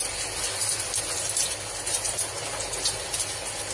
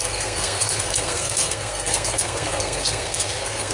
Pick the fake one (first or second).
second